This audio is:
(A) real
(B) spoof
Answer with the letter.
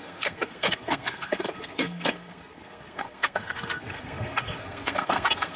B